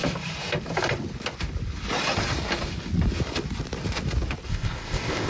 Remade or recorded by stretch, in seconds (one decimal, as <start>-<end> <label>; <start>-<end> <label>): 0.0-4.5 recorded; 4.5-5.3 remade